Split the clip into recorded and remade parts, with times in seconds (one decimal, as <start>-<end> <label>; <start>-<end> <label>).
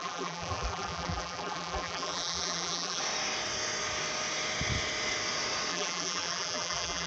0.0-3.0 remade; 3.0-5.7 recorded; 5.7-7.1 remade